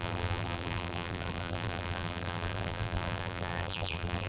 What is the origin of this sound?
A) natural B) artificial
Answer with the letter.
B